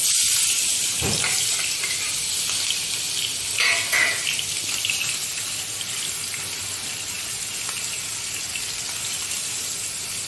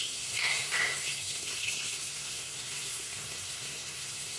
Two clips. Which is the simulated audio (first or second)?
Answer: second